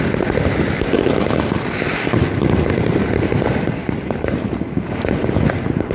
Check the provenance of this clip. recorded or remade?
recorded